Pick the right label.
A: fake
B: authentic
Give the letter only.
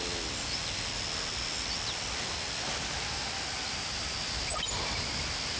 B